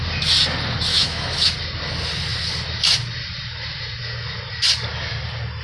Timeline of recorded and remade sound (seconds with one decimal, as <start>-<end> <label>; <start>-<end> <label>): 0.0-0.9 recorded; 0.9-1.5 remade; 1.5-5.6 recorded